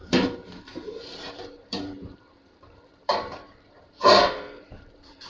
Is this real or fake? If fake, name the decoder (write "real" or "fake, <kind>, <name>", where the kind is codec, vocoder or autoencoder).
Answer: fake, vocoder, BigVGAN v2